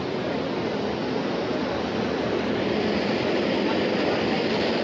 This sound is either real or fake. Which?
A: real